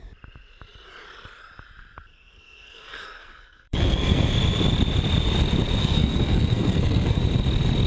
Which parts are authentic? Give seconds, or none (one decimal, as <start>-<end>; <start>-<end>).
0.0-2.1; 4.3-5.8; 7.2-7.9